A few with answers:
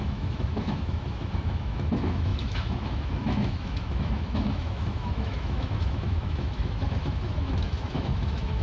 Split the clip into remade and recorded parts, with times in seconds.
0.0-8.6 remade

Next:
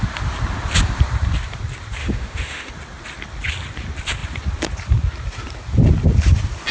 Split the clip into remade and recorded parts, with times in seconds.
0.0-2.0 recorded; 2.0-2.7 remade; 2.7-6.7 recorded

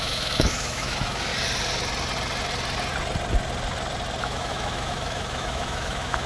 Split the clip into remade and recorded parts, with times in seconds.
0.0-1.3 remade; 1.3-4.2 recorded; 4.2-6.3 remade

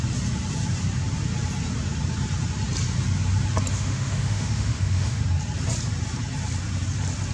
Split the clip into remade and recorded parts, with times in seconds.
0.0-3.7 recorded; 3.7-5.2 remade; 5.2-7.3 recorded